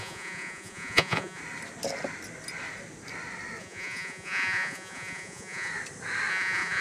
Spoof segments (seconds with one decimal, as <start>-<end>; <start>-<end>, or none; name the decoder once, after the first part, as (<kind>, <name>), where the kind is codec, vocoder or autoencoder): 0.0-1.4 (vocoder, Vocos); 3.6-5.7; 6.3-6.8